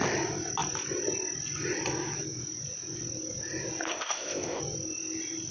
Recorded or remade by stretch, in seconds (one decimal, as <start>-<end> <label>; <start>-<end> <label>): 0.0-3.9 recorded; 3.9-4.6 remade; 4.6-5.5 recorded